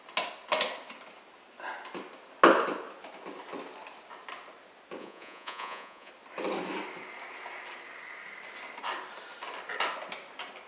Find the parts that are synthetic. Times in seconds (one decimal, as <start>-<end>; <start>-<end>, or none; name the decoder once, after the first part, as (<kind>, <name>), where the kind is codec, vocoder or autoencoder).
5.0-6.1 (vocoder, Vocos)